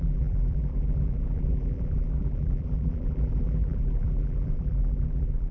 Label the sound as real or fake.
fake